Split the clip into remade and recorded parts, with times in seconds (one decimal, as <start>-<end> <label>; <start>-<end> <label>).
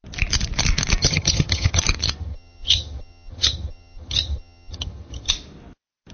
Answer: 0.0-1.0 recorded; 1.0-1.8 remade; 1.8-2.2 recorded; 2.2-5.3 remade; 5.3-6.1 recorded